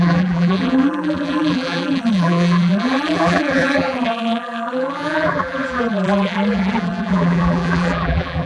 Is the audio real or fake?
fake